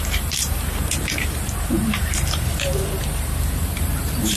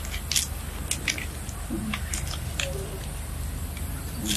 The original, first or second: second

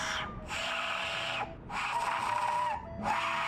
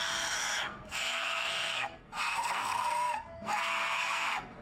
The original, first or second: first